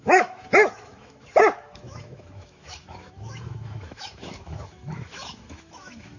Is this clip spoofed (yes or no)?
yes